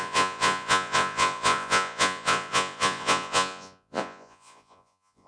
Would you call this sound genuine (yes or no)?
no